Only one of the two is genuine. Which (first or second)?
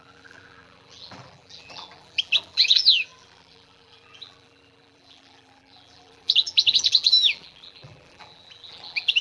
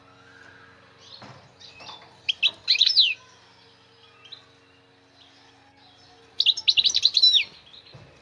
second